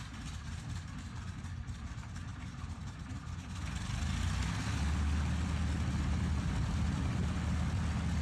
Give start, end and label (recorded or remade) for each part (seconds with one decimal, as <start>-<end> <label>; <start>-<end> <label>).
0.0-2.3 recorded; 2.3-3.1 remade; 3.1-8.2 recorded